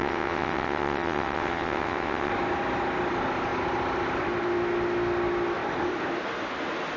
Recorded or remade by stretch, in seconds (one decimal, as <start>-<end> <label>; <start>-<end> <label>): 0.0-2.3 remade; 2.3-7.0 recorded

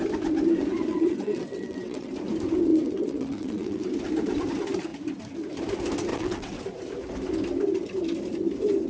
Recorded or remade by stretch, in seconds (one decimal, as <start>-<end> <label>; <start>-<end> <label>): 0.0-0.9 recorded; 0.9-2.1 remade; 2.1-2.7 recorded; 2.7-3.9 remade; 3.9-6.1 recorded; 6.1-6.6 remade; 6.6-8.9 recorded

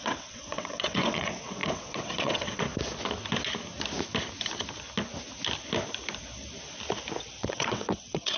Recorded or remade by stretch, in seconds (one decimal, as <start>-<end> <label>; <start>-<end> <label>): 0.0-2.7 remade; 2.7-7.3 recorded; 7.3-8.4 remade

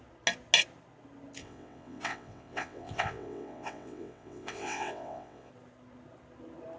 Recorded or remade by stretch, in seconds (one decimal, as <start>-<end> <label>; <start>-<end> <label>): 0.0-1.4 recorded; 1.4-5.5 remade; 5.5-6.8 recorded

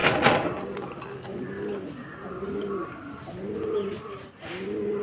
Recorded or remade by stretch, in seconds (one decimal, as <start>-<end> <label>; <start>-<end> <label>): 0.0-5.0 recorded

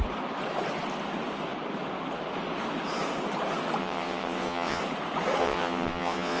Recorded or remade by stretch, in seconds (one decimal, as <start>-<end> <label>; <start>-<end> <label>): 0.0-3.8 recorded; 3.8-4.8 remade; 4.8-5.4 recorded; 5.4-6.4 remade

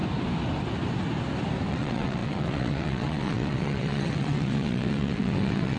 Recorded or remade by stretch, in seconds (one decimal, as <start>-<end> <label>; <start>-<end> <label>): 0.0-1.7 recorded; 1.7-5.8 remade